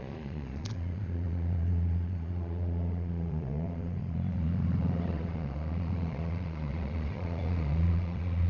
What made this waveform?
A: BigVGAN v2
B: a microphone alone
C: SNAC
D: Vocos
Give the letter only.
D